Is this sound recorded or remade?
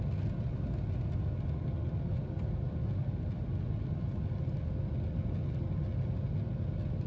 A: recorded